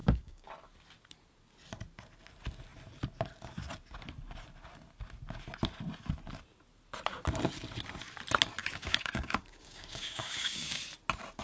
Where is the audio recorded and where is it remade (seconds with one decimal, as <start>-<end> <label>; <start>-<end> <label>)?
0.0-0.5 remade; 0.5-8.6 recorded; 8.6-10.8 remade; 10.8-11.4 recorded